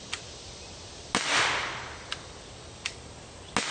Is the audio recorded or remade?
recorded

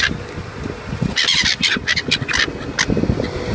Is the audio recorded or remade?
recorded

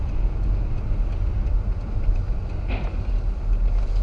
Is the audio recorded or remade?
recorded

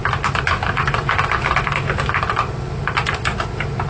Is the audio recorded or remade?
recorded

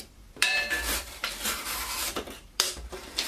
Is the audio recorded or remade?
remade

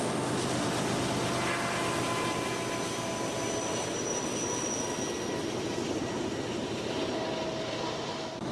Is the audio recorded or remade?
recorded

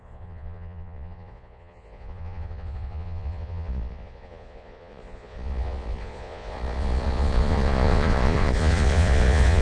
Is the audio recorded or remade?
remade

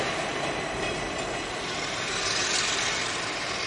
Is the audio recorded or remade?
remade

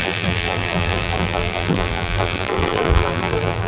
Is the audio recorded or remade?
remade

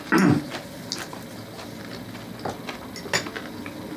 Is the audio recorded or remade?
recorded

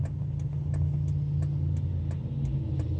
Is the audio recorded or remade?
recorded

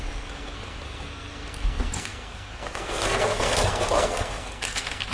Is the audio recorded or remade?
remade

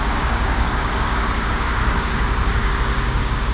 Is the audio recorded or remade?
remade